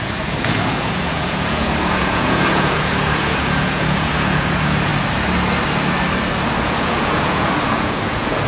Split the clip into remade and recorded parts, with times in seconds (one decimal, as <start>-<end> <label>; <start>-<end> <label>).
0.0-4.9 remade; 4.9-6.6 recorded; 6.6-8.5 remade